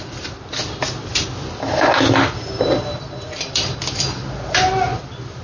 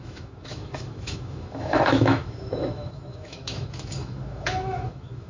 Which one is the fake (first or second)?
second